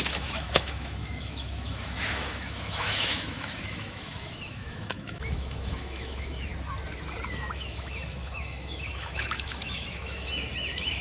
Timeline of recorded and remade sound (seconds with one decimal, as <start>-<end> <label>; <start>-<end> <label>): 0.0-6.5 remade; 6.5-7.3 recorded; 7.3-11.0 remade